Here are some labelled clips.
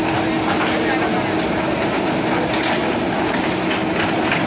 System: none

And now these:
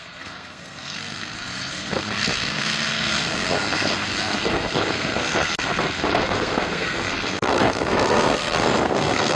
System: codec, SNAC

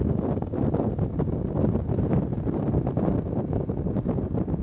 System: none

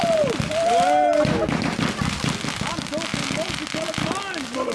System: none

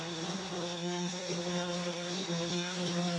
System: codec, SNAC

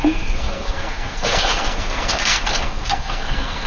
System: codec, SNAC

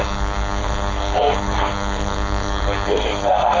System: codec, SNAC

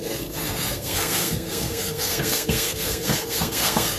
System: codec, SNAC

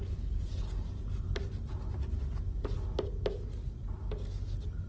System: none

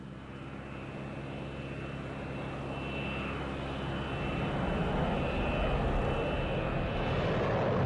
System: none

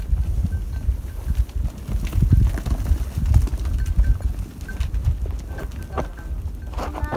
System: none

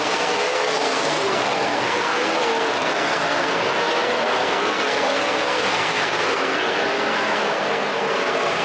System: codec, SNAC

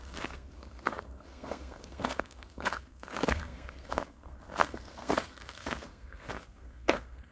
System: codec, SNAC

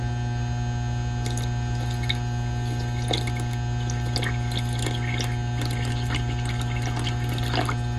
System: none